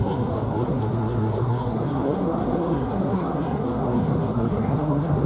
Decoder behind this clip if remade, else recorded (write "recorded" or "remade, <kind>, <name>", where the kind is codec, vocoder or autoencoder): remade, codec, SNAC